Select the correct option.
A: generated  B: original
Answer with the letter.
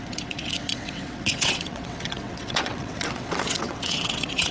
A